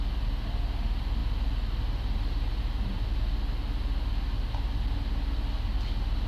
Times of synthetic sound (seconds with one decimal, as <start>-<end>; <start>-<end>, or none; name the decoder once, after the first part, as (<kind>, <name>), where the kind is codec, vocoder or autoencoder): none